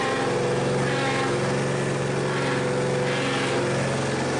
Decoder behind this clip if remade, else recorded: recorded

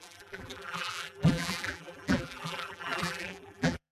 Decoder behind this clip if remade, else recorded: remade, vocoder, BigVGAN v2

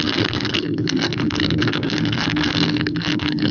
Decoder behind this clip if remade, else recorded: remade, codec, SNAC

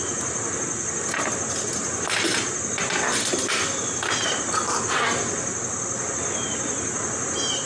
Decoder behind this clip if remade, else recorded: recorded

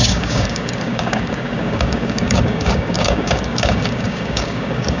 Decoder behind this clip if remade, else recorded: remade, codec, DAC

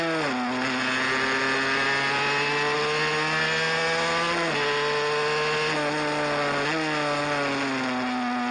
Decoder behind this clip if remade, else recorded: recorded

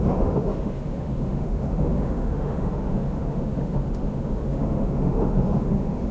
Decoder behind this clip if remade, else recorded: remade, autoencoder, DAC-VAE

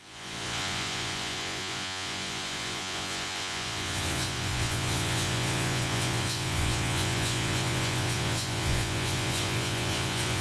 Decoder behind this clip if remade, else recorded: remade, vocoder, Vocos